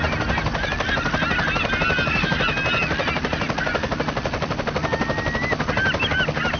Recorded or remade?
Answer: recorded